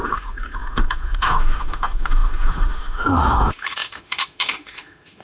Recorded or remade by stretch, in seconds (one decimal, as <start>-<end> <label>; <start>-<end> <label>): 0.0-5.2 remade